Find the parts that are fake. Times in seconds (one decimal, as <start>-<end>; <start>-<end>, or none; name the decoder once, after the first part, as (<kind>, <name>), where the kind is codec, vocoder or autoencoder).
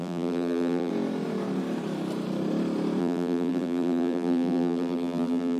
0.0-0.9 (vocoder, BigVGAN v2); 3.0-5.6